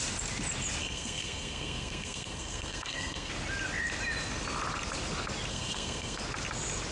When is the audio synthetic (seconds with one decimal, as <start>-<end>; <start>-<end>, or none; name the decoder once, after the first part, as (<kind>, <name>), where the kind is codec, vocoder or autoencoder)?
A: 0.8-3.3 (codec, SNAC); 5.5-6.2